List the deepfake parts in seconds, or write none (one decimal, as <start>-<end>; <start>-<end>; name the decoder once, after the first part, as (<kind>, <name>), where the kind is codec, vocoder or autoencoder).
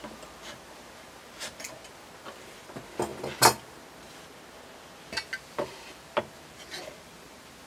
none